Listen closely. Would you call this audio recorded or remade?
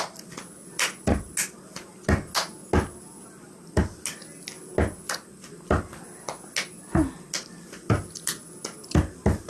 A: recorded